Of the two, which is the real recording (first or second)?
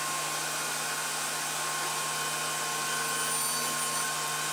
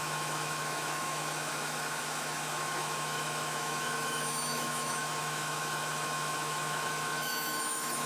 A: first